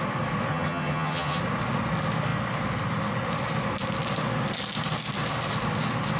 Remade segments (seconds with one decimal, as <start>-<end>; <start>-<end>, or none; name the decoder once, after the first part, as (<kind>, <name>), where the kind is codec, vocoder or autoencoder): 0.5-1.4 (vocoder, HiFi-GAN)